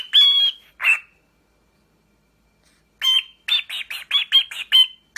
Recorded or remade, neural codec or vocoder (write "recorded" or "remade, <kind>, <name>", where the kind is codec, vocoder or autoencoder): recorded